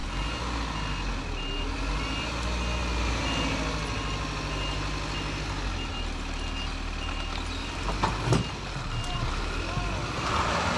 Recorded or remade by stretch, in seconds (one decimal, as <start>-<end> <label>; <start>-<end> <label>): 0.0-10.8 recorded